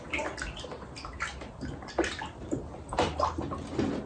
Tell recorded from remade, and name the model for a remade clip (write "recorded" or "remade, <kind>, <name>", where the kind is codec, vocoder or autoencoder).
recorded